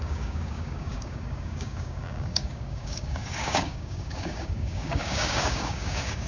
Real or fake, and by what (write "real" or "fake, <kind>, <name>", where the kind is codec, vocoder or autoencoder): fake, codec, DAC